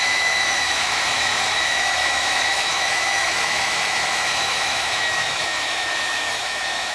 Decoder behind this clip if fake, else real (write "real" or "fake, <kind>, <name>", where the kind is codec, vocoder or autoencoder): fake, autoencoder, DAC-VAE